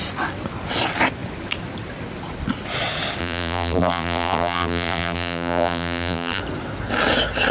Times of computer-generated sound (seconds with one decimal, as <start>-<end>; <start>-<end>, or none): 3.2-6.4